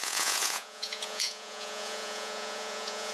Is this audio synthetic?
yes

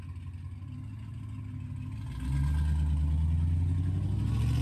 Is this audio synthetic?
no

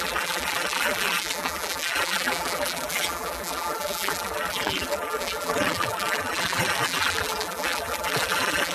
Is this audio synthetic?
yes